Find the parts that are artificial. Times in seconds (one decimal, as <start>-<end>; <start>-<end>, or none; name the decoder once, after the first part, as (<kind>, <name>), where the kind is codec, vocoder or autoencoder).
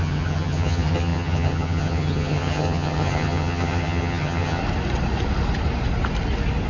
0.0-4.6 (vocoder, HiFi-GAN)